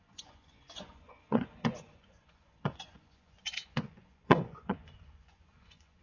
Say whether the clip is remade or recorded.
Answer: remade